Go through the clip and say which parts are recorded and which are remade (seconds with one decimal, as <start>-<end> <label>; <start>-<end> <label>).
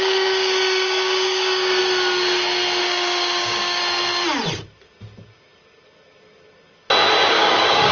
0.0-1.8 remade; 1.8-2.8 recorded; 2.8-3.8 remade; 3.8-7.3 recorded; 7.3-7.9 remade